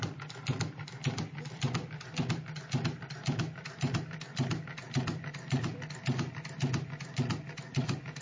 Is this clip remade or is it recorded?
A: remade